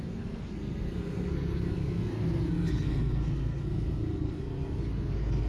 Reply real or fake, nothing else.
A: fake